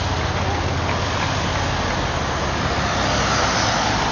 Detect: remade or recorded recorded